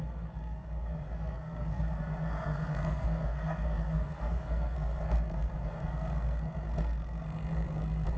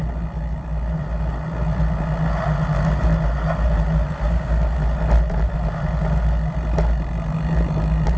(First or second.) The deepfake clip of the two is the first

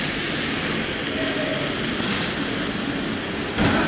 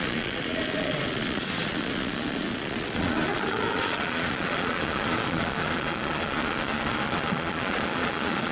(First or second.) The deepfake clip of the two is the second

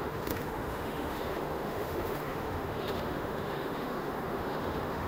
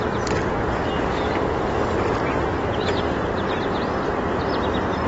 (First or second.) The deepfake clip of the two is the first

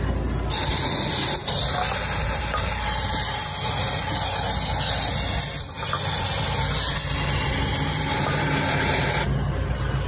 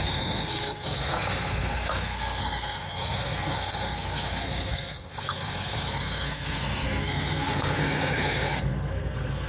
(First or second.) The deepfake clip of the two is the second